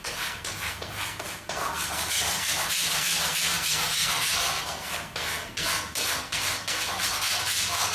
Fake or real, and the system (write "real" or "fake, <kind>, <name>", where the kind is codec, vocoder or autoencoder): fake, codec, SNAC